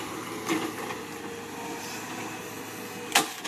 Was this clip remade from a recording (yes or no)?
yes